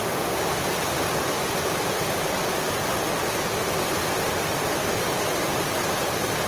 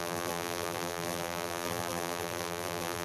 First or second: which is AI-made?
second